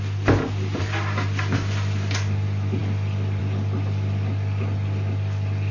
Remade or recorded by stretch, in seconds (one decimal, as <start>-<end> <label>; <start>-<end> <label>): 0.0-5.7 recorded